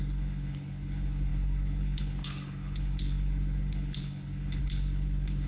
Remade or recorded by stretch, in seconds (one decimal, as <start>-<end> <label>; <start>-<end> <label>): 0.0-5.5 remade